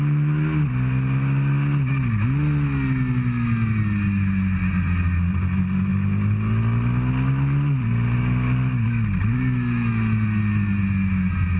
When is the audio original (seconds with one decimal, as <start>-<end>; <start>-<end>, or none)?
0.0-11.6